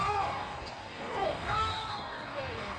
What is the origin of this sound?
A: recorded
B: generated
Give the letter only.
B